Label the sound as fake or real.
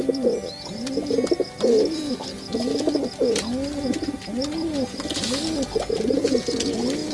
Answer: real